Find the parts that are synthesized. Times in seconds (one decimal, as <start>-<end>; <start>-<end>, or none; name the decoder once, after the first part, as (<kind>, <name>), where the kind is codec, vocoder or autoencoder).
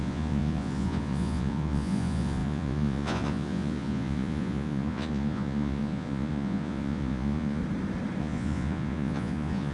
0.0-7.6 (vocoder, Vocos); 8.2-9.7